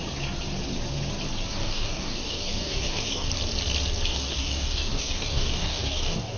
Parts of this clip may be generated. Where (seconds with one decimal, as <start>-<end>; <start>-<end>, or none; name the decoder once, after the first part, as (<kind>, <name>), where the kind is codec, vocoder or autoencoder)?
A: 1.5-3.3 (codec, DAC); 4.1-6.4